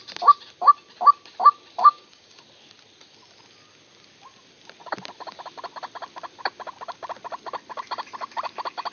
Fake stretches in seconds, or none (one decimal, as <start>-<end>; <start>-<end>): 1.8-2.4

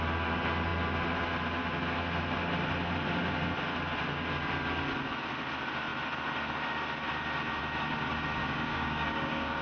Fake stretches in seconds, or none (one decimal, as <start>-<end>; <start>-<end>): 8.4-9.6

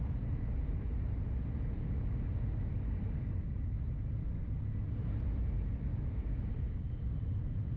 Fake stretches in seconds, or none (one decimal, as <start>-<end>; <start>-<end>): 5.9-6.5

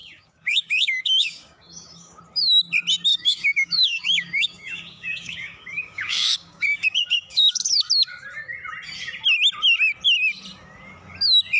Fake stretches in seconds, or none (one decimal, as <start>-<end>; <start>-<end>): 0.0-2.2; 3.1-7.8

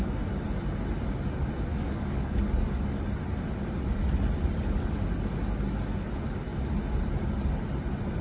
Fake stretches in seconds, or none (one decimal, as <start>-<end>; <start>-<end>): 1.7-2.4

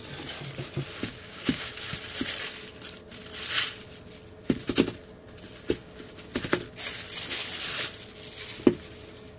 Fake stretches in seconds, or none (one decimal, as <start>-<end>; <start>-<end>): 1.1-1.7

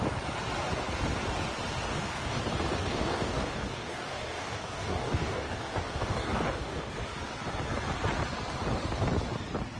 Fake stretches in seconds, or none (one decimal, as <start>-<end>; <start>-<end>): 1.9-2.4; 2.8-6.9